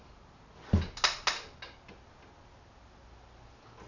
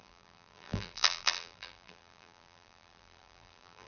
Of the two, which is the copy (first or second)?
second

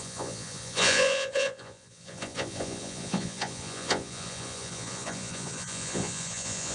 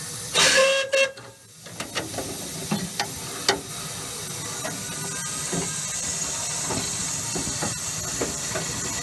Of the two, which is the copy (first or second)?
first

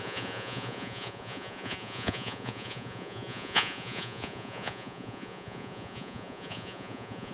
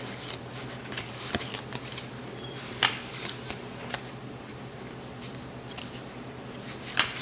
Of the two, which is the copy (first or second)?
first